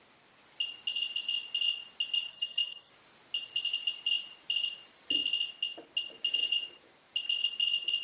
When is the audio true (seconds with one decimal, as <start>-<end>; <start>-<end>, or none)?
0.0-2.3; 2.9-8.0